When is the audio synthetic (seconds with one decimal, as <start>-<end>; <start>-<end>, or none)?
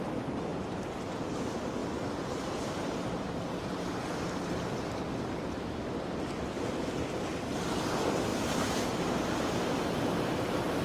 0.0-0.5; 1.3-8.3; 9.8-10.8